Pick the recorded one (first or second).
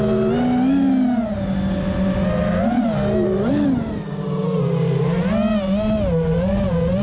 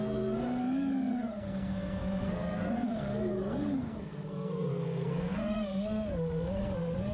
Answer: first